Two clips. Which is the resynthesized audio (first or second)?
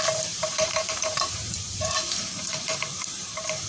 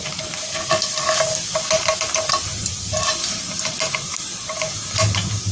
first